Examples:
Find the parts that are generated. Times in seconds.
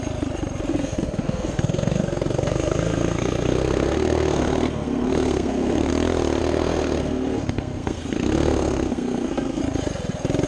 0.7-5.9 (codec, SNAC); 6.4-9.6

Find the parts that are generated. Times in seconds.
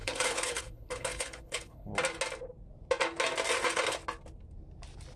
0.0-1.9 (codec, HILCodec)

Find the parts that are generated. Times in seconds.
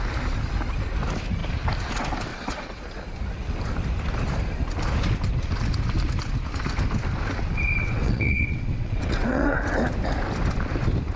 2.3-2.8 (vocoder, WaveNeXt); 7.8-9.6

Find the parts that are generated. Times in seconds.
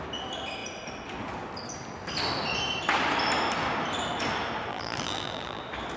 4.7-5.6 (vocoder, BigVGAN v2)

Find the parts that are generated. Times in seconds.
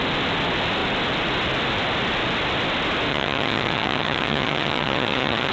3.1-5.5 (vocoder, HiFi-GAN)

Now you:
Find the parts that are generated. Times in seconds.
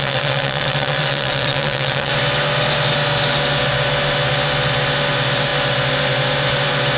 0.0-2.1 (vocoder, WaveNeXt)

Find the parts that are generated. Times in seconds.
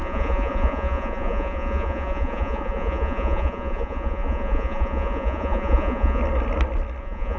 0.0-6.2 (vocoder, Vocos); 7.0-7.4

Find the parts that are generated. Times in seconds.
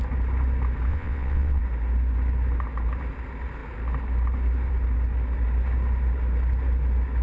0.9-1.6 (vocoder, WaveNeXt)